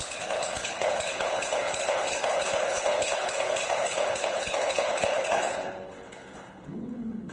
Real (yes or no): no